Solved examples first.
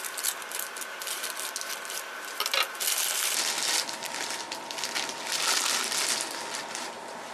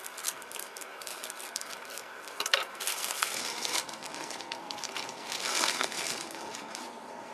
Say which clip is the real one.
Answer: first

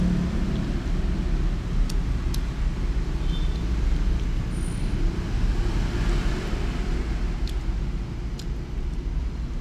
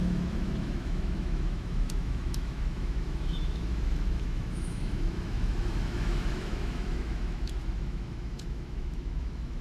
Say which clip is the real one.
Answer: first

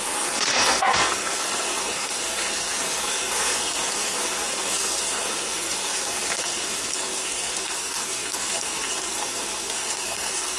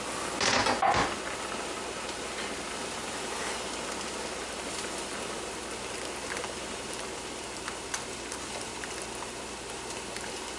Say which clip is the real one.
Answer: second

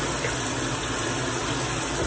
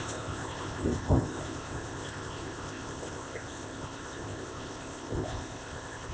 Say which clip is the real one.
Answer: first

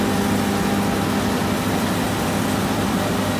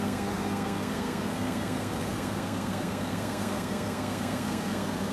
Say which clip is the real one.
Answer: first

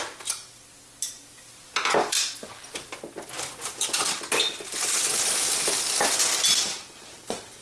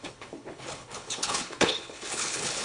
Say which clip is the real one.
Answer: first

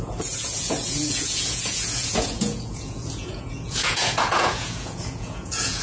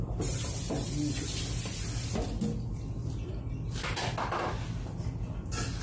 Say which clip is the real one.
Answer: second